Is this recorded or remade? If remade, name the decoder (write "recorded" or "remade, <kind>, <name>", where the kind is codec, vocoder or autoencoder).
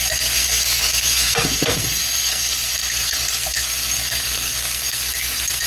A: remade, codec, SNAC